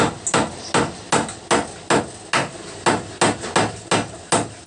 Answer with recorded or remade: recorded